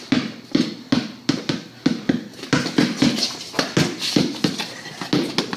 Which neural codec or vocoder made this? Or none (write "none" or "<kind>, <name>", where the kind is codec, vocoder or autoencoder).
none